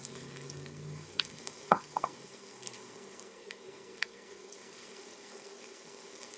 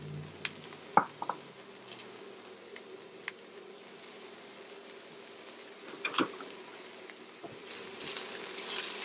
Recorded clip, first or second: second